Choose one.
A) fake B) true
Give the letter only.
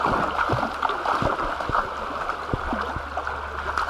B